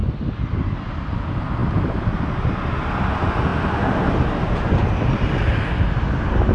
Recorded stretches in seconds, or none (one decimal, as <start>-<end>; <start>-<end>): 0.0-1.6; 2.4-6.5